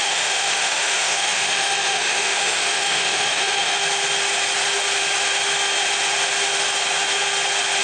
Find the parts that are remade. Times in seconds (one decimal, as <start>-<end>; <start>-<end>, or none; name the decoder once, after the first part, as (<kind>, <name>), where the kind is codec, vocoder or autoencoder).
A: 0.0-3.7 (autoencoder, DAC-VAE)